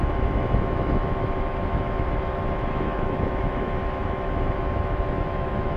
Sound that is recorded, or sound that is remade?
remade